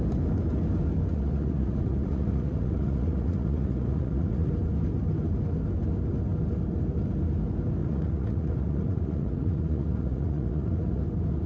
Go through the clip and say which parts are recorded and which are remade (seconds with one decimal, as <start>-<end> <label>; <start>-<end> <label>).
0.0-1.1 recorded; 1.1-4.5 remade; 4.5-7.8 recorded; 7.8-11.0 remade; 11.0-11.5 recorded